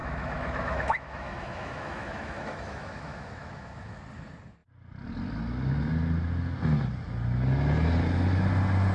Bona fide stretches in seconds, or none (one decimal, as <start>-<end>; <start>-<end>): 4.0-8.9